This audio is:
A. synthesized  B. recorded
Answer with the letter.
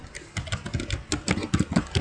B